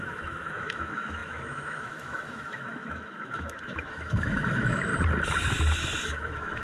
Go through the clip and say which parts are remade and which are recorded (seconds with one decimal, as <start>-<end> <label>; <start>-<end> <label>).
0.0-4.9 remade; 4.9-6.1 recorded; 6.1-6.6 remade